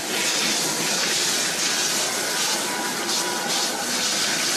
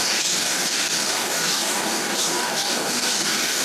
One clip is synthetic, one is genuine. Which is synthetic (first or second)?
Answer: second